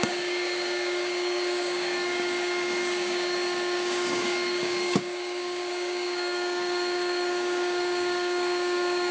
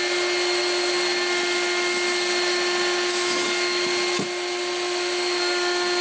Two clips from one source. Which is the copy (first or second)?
first